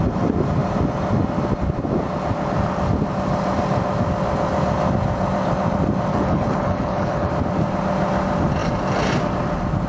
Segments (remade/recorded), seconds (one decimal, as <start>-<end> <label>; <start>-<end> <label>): 0.0-6.1 recorded; 6.1-7.3 remade; 7.3-9.9 recorded